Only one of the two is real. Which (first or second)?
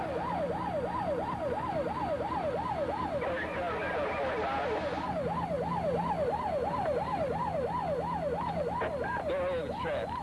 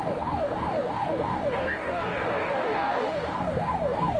first